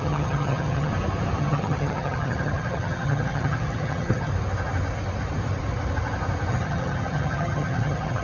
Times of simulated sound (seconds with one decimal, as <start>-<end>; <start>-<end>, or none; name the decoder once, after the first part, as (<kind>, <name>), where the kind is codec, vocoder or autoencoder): 0.0-0.9 (vocoder, HiFi-GAN); 1.4-4.3; 6.5-8.2

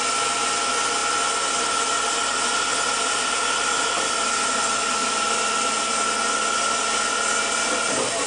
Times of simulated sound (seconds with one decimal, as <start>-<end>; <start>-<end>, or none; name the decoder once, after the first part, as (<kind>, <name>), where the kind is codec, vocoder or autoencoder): none

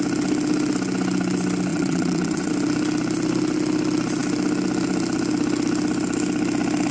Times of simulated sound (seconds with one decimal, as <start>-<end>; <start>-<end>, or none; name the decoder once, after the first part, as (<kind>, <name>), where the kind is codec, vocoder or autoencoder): 1.7-2.5 (vocoder, WaveNeXt)

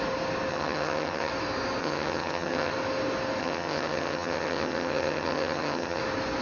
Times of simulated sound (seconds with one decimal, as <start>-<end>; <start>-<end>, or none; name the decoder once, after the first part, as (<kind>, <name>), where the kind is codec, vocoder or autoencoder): 0.5-1.3 (vocoder, HiFi-GAN); 1.8-2.7; 3.4-6.0

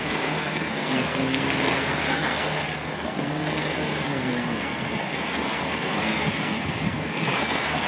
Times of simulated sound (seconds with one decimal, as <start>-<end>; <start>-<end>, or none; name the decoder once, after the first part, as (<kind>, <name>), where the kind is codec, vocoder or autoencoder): 0.0-7.9 (codec, SNAC)